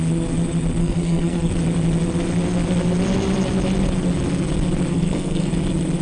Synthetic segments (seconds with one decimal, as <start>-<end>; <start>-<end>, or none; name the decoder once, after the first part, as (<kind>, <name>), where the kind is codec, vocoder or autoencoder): 0.8-1.5 (codec, SNAC); 4.9-5.5